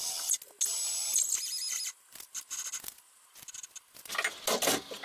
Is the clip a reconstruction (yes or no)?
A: no